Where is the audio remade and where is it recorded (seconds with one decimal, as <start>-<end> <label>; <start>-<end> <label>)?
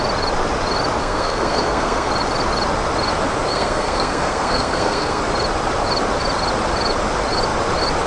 0.0-1.0 recorded; 1.0-2.1 remade; 2.1-3.5 recorded; 3.5-5.2 remade; 5.2-8.1 recorded